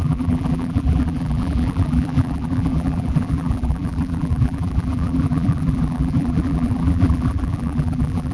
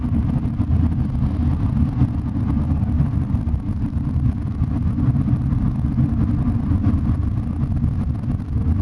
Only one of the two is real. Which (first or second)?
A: second